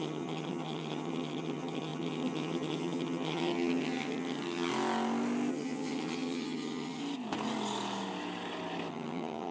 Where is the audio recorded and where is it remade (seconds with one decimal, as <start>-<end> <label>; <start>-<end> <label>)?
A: 0.0-4.7 remade; 4.7-5.5 recorded; 5.5-7.0 remade; 7.0-8.9 recorded; 8.9-9.5 remade